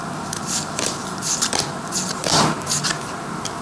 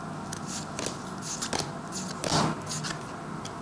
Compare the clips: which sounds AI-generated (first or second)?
first